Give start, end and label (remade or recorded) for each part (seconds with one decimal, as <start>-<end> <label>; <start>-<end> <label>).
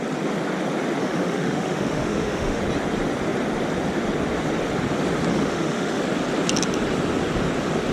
0.0-1.0 recorded; 1.0-2.6 remade; 2.6-5.3 recorded; 5.3-6.0 remade; 6.0-7.9 recorded